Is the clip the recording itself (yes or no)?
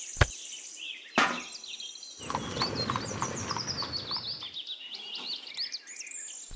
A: yes